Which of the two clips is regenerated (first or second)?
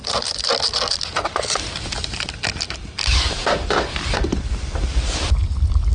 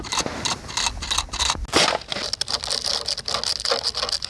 first